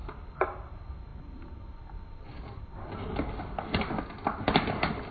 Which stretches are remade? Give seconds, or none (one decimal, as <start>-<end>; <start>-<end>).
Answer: none